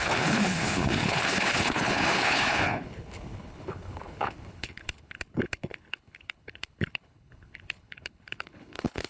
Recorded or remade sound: remade